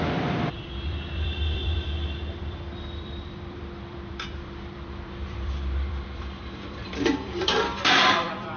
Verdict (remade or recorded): remade